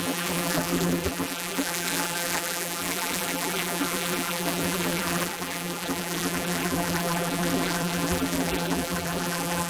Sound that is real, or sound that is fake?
fake